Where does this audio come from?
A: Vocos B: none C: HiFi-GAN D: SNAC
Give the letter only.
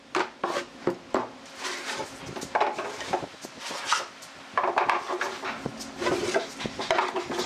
B